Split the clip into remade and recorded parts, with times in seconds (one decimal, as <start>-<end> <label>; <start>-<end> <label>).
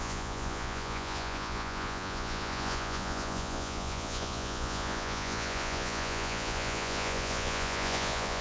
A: 0.0-8.4 remade